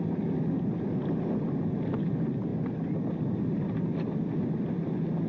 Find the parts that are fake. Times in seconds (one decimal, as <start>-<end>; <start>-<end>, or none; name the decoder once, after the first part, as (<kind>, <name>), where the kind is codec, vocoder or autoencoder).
none